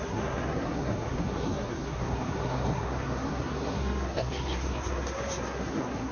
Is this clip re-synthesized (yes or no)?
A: yes